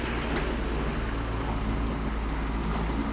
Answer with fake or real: real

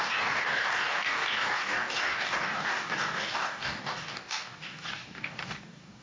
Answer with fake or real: fake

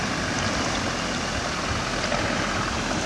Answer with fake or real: real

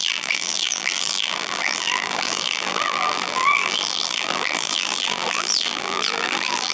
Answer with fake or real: fake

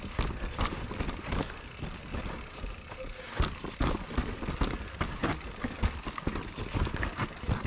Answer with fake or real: real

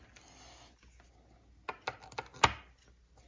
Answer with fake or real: real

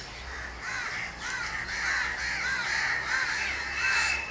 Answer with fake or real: real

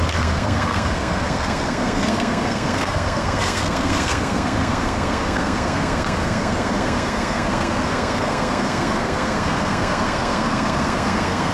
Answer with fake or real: fake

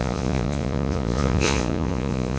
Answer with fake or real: fake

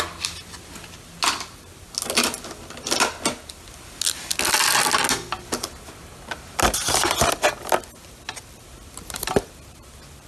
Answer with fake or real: real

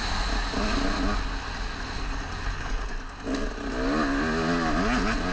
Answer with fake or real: real